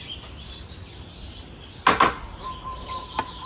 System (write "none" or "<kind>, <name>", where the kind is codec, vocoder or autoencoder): none